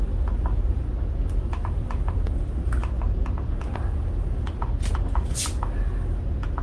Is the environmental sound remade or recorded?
recorded